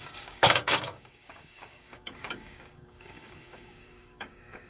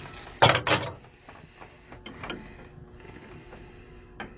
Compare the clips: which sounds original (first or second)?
second